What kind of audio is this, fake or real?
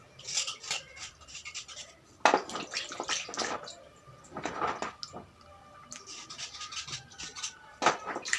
real